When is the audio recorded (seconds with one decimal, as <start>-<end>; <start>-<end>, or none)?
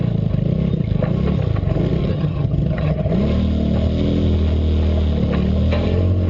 0.0-2.0; 3.1-6.3